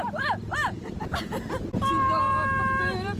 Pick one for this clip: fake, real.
fake